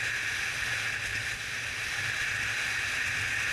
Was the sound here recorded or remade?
recorded